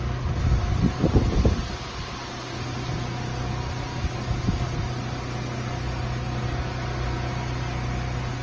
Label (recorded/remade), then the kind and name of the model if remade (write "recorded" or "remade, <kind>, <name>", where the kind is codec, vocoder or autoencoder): recorded